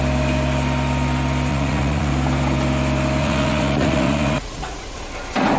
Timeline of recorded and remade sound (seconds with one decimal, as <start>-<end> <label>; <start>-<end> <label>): 0.0-1.5 recorded; 1.5-2.1 remade; 2.1-3.2 recorded; 3.2-5.0 remade; 5.0-5.6 recorded